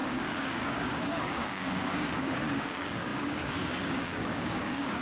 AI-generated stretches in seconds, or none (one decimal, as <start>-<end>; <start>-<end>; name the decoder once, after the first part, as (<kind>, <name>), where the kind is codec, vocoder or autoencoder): 0.0-5.0 (codec, DAC)